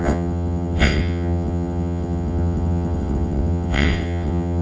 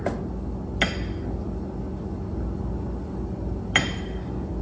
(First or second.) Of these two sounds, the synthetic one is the first